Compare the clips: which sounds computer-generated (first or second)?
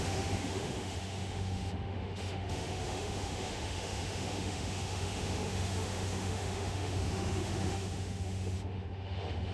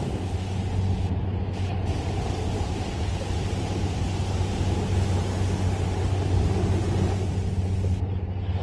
first